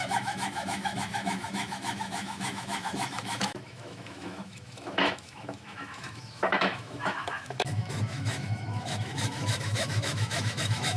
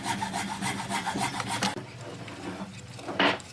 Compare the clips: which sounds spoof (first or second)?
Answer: first